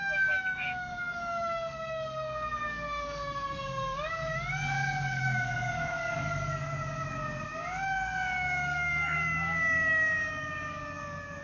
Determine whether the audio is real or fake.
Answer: fake